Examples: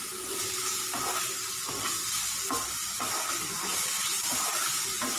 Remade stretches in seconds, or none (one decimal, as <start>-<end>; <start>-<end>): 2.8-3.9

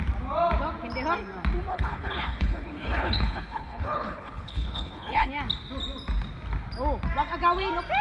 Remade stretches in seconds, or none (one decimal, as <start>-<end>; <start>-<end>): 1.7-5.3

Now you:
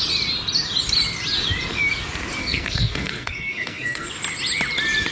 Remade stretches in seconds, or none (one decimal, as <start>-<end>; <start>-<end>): 2.4-4.1